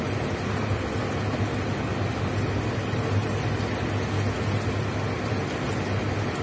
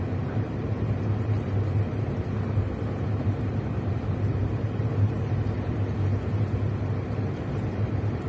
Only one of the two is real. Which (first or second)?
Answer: first